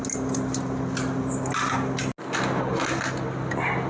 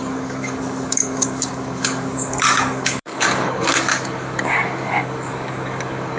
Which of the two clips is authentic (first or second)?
first